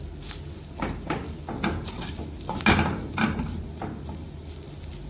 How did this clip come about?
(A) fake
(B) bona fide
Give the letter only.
B